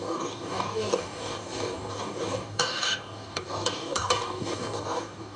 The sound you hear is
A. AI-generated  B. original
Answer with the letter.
A